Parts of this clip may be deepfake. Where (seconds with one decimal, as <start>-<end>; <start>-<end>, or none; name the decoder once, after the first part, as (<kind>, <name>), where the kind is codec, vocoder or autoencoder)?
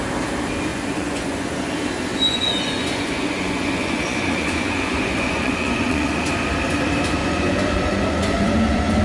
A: 0.7-1.7 (vocoder, Vocos); 2.1-6.3; 7.2-9.0